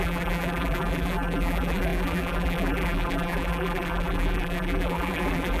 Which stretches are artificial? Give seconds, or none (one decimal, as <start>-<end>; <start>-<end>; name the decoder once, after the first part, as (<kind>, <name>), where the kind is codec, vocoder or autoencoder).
0.0-5.6 (vocoder, BigVGAN v2)